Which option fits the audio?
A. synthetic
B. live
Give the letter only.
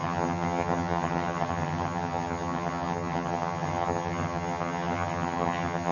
A